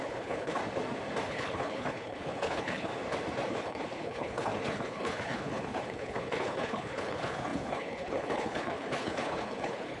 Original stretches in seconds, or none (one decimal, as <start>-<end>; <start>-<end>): 0.6-1.3; 2.9-3.5